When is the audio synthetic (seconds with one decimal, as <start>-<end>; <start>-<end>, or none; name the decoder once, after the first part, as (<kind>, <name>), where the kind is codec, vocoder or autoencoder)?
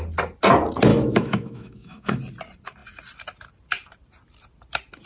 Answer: 0.9-2.2 (autoencoder, DAC-VAE)